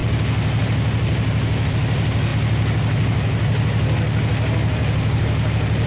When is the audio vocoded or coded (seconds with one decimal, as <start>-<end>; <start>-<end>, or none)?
none